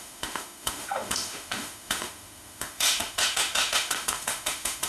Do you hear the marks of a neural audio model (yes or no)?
yes